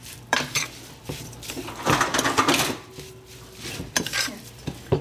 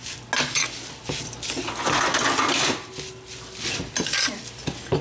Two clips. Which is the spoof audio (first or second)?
first